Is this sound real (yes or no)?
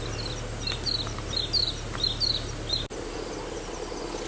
yes